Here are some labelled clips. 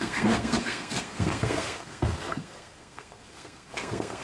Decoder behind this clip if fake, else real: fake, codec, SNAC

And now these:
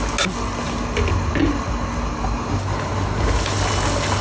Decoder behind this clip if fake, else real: real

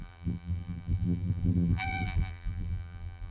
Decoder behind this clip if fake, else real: fake, vocoder, BigVGAN v2